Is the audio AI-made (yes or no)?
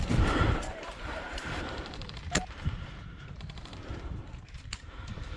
yes